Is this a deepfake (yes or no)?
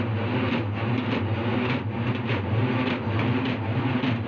no